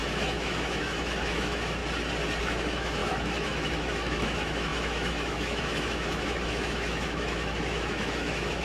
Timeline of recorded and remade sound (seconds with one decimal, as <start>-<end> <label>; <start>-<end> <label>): 0.0-1.8 remade; 1.8-2.4 recorded; 2.4-8.6 remade